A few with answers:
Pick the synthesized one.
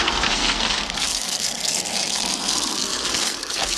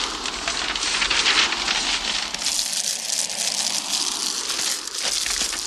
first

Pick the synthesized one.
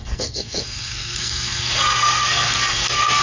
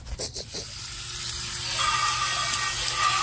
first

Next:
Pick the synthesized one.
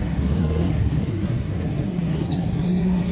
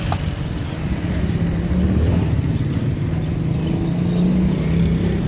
first